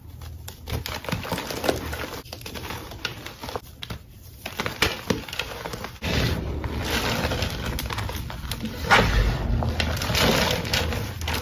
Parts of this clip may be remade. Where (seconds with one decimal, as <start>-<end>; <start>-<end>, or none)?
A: none

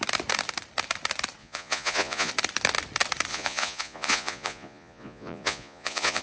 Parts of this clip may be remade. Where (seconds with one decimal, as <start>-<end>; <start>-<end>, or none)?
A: 1.4-2.3; 3.3-6.2